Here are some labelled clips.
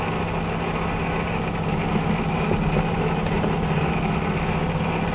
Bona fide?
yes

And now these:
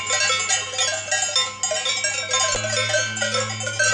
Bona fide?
yes